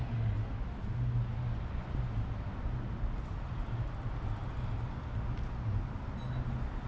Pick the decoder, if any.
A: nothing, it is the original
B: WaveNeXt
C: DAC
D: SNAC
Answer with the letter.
A